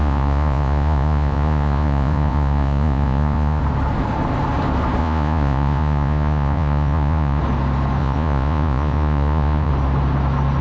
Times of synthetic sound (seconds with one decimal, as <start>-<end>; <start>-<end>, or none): 0.0-3.6; 5.0-7.4; 8.0-9.7